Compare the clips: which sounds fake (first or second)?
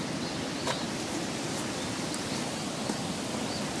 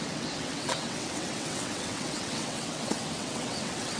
second